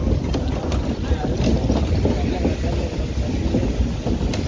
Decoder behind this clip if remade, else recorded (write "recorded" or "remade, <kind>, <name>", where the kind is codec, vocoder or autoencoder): recorded